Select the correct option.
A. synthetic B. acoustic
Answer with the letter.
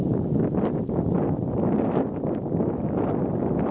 B